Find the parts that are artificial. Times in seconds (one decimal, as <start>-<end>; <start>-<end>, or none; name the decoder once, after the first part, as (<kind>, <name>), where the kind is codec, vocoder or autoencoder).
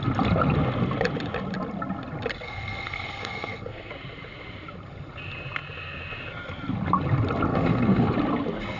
2.3-3.9 (codec, SNAC); 7.5-8.1